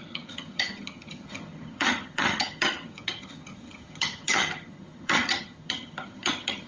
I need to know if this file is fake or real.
fake